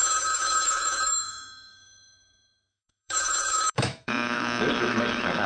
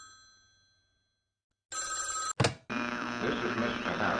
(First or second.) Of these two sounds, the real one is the second